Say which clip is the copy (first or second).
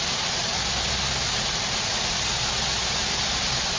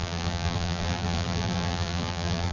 second